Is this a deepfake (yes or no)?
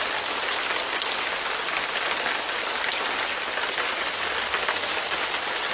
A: no